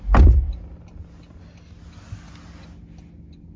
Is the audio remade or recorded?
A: recorded